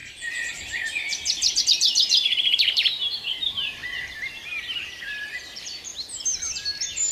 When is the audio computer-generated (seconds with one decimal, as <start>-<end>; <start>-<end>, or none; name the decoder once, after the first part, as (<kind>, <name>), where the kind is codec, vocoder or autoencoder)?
0.0-5.9 (vocoder, BigVGAN v2)